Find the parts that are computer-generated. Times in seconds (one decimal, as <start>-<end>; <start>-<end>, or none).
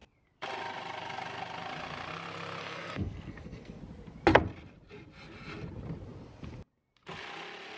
2.6-3.8